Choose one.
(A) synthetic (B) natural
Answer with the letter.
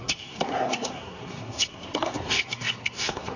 A